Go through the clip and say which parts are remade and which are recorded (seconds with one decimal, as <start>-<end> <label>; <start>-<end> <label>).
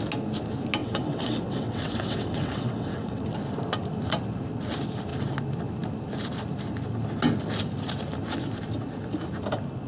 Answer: 0.0-0.8 recorded; 0.8-3.2 remade; 3.2-9.9 recorded